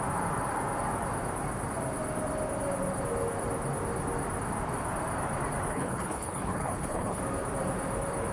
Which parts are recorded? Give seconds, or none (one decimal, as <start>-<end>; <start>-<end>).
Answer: 0.0-5.7; 7.2-8.3